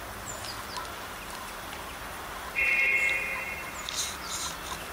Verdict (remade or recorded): recorded